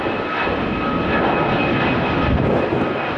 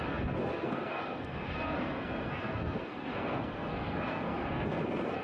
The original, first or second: first